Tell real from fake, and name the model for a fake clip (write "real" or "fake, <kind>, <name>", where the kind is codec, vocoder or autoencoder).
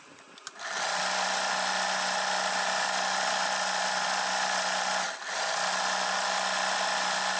real